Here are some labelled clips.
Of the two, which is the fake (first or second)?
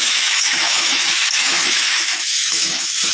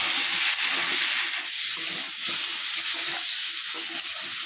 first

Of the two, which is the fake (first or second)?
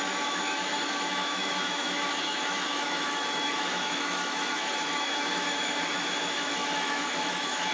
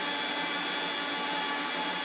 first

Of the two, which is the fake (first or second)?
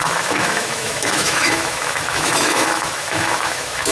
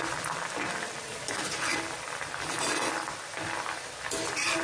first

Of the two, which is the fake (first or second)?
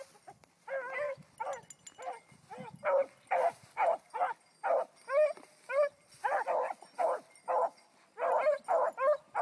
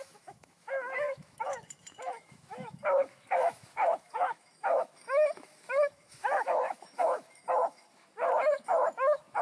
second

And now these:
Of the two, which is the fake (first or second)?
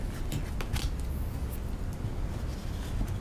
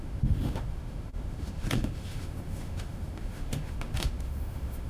second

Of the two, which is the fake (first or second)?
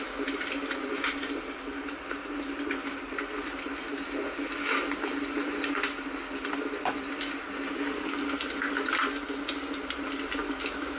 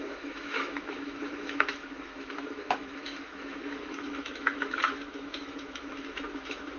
second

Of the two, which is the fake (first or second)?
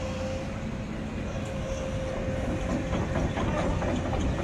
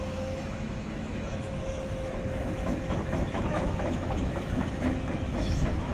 second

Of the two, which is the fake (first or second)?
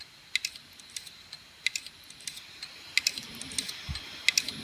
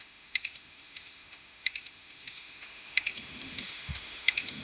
second